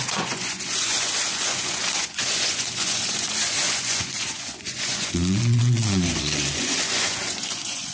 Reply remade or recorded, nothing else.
remade